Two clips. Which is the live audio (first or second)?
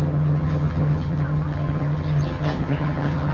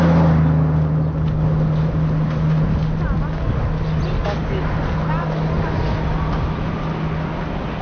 second